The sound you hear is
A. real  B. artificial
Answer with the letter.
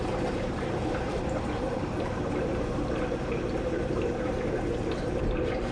B